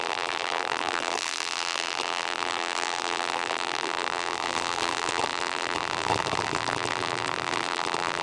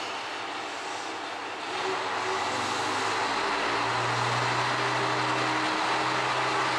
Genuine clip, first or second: second